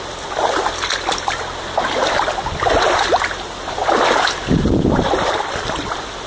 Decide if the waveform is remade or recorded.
recorded